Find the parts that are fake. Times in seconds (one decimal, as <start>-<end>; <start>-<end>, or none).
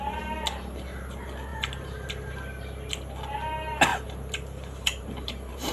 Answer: 1.5-2.3; 3.9-5.7